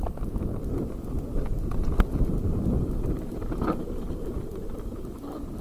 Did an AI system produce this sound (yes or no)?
no